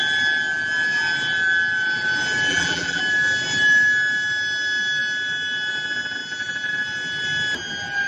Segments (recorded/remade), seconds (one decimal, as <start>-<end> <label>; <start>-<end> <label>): 0.0-2.5 recorded; 2.5-3.0 remade; 3.0-8.1 recorded